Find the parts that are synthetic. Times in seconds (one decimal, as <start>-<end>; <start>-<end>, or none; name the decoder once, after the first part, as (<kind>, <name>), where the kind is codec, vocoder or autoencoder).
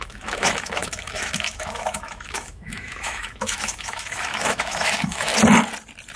0.0-5.3 (autoencoder, DAC-VAE)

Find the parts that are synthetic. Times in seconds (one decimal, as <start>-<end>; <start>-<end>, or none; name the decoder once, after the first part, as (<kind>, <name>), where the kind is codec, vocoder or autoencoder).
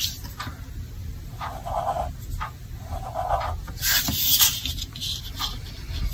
none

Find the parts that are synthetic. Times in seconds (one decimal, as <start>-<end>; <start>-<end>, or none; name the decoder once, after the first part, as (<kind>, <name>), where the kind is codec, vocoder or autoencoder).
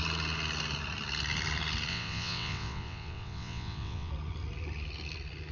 1.9-4.1 (vocoder, WaveNeXt)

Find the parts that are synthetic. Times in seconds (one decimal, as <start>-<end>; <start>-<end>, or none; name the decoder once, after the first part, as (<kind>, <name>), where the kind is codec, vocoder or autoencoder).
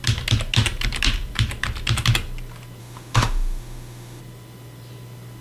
2.8-4.2 (autoencoder, DAC-VAE)